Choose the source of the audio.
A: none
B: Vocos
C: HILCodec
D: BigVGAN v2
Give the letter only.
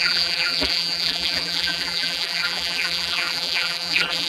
D